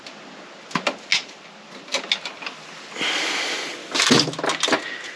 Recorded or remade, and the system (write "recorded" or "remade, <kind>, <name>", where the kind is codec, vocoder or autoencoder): recorded